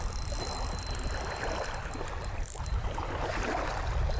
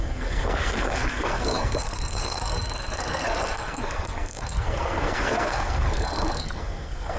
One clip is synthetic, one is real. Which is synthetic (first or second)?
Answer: second